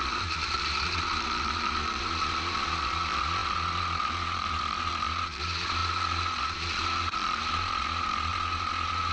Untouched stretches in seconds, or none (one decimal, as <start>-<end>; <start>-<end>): none